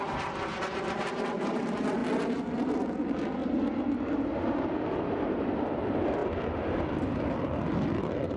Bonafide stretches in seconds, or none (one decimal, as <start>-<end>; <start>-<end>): 2.0-2.6; 3.4-5.1